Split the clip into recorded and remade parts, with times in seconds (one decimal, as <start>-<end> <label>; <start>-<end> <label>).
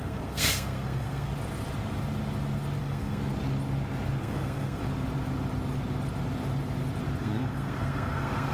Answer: 0.0-1.3 remade; 1.3-2.8 recorded; 2.8-3.2 remade; 3.2-4.2 recorded; 4.2-4.8 remade; 4.8-7.2 recorded; 7.2-8.5 remade